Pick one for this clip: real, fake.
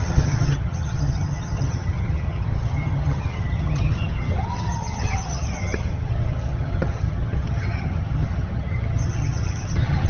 fake